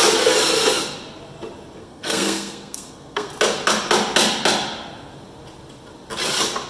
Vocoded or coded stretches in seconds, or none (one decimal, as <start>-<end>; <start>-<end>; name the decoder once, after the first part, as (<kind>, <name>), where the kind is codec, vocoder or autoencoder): 1.8-3.3 (codec, SNAC)